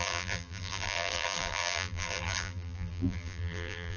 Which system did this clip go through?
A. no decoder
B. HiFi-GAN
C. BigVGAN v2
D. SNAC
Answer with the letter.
C